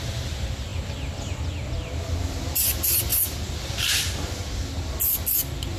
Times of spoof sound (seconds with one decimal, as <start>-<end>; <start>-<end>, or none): none